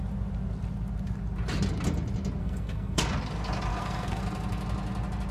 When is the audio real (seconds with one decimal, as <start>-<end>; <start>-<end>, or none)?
0.0-2.4; 3.0-3.7; 4.2-5.3